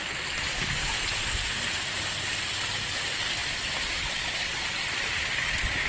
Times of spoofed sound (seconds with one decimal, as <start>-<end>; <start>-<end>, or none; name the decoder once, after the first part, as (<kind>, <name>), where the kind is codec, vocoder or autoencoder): 3.4-4.9 (vocoder, BigVGAN v2)